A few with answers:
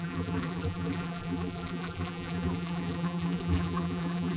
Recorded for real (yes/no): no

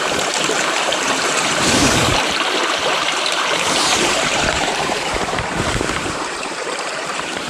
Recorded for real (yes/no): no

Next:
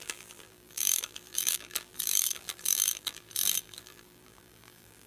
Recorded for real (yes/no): no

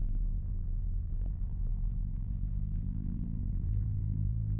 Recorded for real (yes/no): no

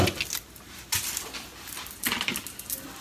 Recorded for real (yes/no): yes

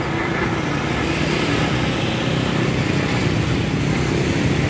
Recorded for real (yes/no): yes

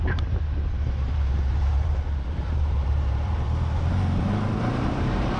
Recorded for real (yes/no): no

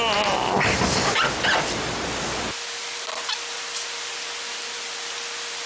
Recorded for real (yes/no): yes